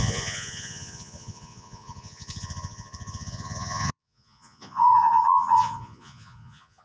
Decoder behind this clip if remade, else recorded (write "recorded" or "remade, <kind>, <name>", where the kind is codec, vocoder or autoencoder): remade, vocoder, Vocos